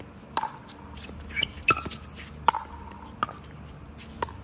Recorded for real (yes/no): yes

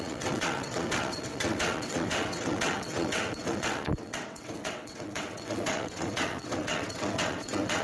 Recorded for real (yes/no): no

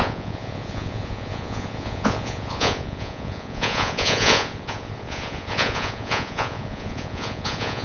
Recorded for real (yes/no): no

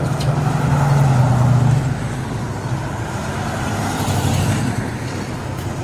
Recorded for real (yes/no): yes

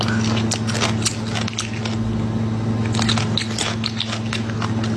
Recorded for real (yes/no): yes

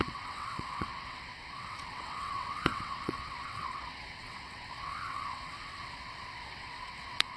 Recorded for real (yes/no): no